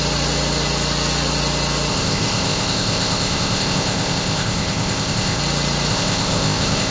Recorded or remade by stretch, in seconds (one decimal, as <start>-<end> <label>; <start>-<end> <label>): 0.0-1.9 recorded; 1.9-5.4 remade; 5.4-5.9 recorded; 5.9-6.9 remade